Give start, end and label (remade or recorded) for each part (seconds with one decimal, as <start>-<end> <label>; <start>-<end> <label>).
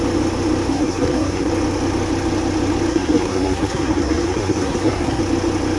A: 0.0-0.7 recorded; 0.7-1.5 remade; 1.5-2.9 recorded; 2.9-5.2 remade; 5.2-5.8 recorded